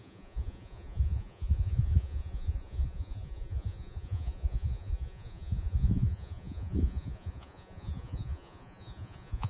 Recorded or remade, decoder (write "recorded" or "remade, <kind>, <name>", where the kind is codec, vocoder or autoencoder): remade, vocoder, Vocos